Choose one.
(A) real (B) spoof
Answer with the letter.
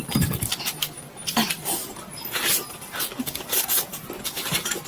A